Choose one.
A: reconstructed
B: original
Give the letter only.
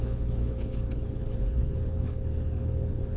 A